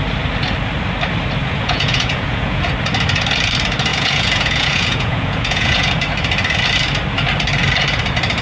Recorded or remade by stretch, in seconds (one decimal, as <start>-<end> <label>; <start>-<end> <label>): 0.0-1.4 recorded; 1.4-2.7 remade; 2.7-3.9 recorded; 3.9-5.9 remade; 5.9-8.4 recorded